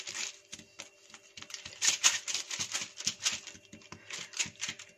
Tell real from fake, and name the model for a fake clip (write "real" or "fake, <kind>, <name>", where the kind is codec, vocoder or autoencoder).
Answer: real